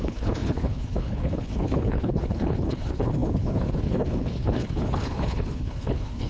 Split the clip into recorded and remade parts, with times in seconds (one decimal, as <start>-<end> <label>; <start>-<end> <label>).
0.0-6.3 remade